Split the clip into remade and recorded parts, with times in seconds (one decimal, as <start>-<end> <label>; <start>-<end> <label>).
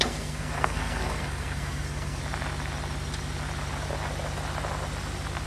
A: 0.0-2.2 remade; 2.2-5.5 recorded